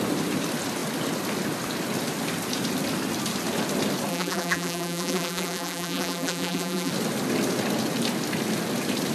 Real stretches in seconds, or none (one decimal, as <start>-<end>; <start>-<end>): 0.0-4.1; 6.9-9.1